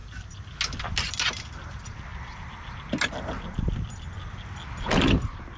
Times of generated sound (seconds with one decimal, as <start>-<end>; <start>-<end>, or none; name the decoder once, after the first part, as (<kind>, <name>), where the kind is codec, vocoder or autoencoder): none